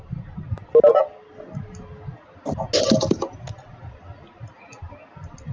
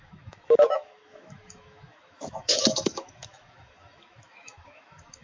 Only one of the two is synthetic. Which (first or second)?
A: second